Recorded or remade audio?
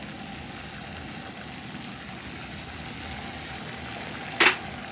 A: recorded